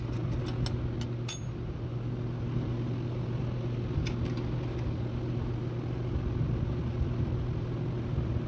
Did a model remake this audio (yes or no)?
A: no